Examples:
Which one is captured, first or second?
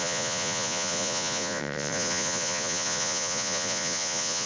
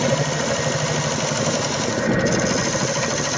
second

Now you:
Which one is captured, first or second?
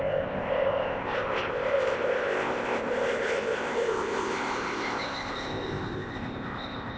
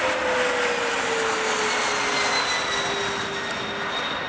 second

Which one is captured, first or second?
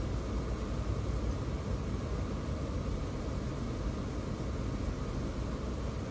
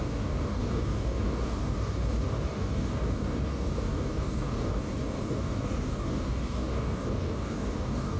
first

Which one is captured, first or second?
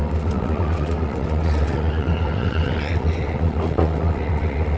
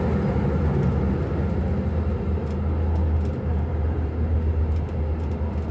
second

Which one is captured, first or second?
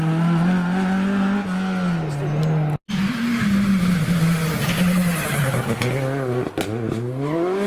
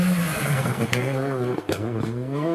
first